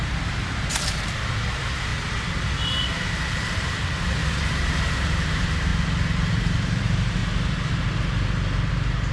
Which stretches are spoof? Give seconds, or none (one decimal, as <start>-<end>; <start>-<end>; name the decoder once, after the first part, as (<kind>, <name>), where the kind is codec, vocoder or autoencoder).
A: 0.0-1.9 (vocoder, BigVGAN v2); 2.6-5.7; 6.3-7.2; 8.7-9.1

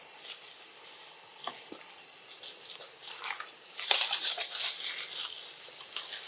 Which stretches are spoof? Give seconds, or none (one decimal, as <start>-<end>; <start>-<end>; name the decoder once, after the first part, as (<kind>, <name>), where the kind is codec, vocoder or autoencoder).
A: none

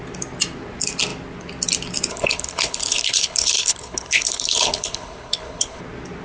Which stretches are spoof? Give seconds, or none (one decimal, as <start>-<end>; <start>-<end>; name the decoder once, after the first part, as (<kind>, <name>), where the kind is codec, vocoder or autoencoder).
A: 2.1-5.8 (codec, HILCodec)

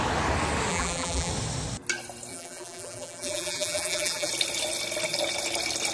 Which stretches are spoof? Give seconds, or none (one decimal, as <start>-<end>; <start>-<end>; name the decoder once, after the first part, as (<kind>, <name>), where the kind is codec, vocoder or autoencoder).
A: 0.7-1.3 (vocoder, BigVGAN v2); 2.3-4.3

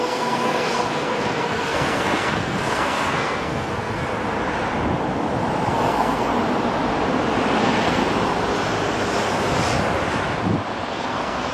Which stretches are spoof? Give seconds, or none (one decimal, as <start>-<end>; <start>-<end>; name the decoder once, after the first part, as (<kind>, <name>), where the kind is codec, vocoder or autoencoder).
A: 0.0-4.1 (codec, SNAC); 5.7-6.3; 7.6-8.0; 10.9-11.5

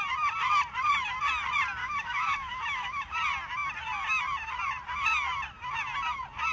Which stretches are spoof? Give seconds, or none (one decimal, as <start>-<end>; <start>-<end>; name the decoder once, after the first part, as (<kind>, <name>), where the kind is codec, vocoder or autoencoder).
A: 1.8-3.1 (autoencoder, DAC-VAE)

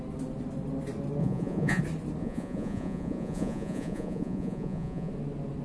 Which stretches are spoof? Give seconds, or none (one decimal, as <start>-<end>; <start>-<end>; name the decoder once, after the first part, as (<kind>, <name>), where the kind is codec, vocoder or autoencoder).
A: 1.2-1.8 (vocoder, Vocos); 2.2-5.1